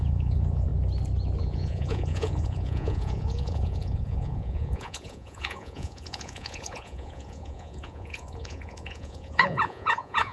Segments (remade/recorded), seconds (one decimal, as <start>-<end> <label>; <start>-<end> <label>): 0.0-0.7 remade; 0.7-1.4 recorded; 1.4-10.3 remade